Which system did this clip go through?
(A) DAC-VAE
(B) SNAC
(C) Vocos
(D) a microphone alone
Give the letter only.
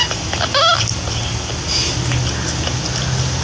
D